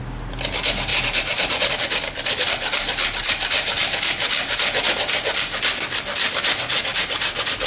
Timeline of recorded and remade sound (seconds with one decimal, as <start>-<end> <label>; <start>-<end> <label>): 0.0-0.9 recorded; 0.9-1.7 remade; 1.7-7.7 recorded